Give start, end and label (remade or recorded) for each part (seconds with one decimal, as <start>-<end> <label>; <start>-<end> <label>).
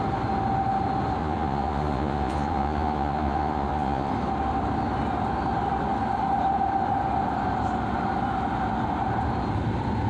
0.0-1.2 recorded; 1.2-4.1 remade; 4.1-10.1 recorded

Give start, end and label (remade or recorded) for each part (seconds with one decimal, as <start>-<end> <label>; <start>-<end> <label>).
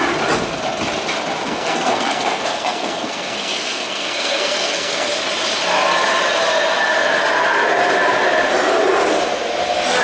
0.0-1.4 recorded; 1.4-5.1 remade; 5.1-10.0 recorded